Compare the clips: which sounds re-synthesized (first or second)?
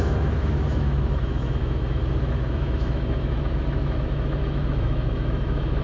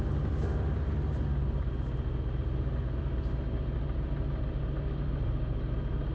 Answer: first